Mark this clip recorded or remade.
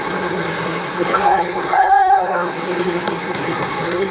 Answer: remade